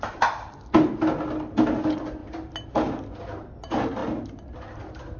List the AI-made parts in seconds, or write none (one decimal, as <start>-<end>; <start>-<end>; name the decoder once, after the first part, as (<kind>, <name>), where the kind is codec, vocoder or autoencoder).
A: none